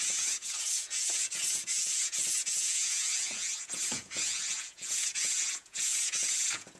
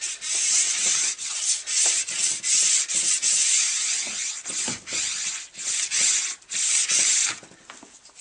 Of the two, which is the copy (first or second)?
first